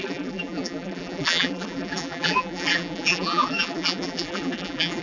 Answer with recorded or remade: remade